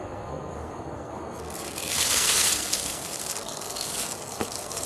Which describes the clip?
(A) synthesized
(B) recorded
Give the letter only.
A